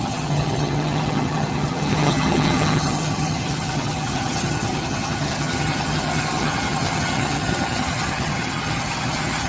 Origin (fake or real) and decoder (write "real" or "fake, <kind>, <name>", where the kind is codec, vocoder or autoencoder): fake, vocoder, HiFi-GAN